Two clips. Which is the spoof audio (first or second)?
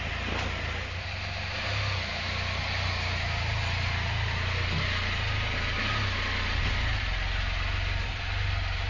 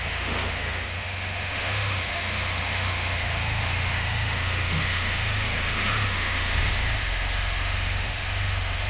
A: second